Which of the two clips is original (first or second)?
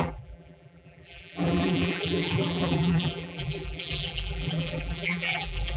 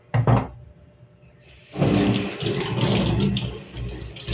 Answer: second